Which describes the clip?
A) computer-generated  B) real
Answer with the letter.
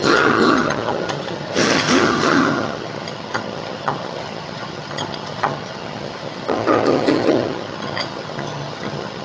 A